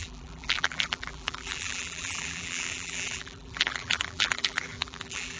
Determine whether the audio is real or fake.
fake